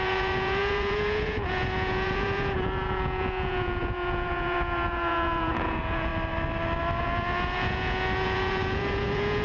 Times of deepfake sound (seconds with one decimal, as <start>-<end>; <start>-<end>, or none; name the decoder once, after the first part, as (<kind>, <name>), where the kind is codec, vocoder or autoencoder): 0.0-6.1 (vocoder, Vocos); 7.0-9.4